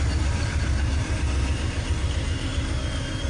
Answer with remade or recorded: recorded